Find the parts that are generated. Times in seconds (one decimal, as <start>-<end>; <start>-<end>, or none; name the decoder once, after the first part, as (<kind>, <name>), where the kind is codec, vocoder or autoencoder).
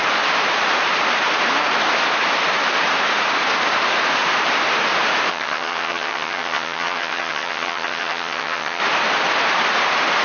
5.3-8.8 (vocoder, HiFi-GAN)